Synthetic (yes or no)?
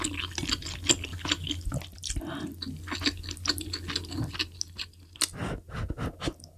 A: no